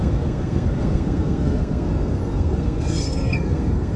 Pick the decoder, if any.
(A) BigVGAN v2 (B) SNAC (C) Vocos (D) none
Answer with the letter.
B